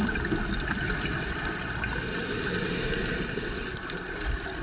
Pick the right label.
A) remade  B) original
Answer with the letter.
B